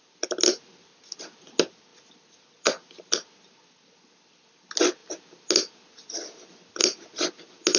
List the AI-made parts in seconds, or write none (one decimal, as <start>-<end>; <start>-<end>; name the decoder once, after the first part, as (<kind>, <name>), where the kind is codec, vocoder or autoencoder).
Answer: none